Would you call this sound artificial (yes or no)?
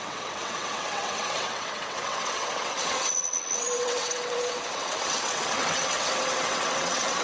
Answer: yes